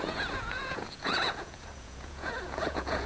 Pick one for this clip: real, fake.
fake